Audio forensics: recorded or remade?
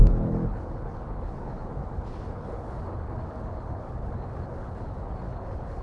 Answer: remade